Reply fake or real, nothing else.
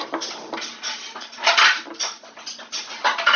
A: real